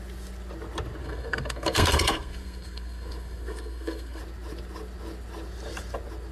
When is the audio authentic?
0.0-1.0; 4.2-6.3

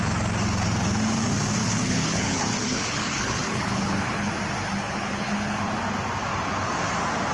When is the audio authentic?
0.0-1.6; 4.3-4.7; 5.7-7.3

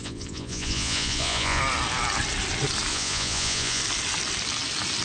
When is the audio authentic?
1.6-2.9; 3.8-5.0

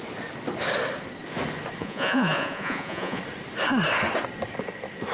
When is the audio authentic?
0.0-1.8; 3.2-5.1

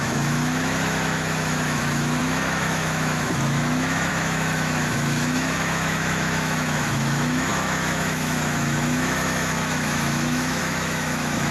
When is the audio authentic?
none

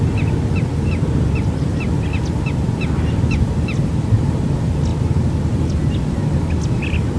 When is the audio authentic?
0.0-7.2

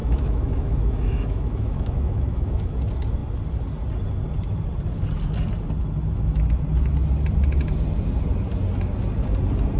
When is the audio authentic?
2.8-9.8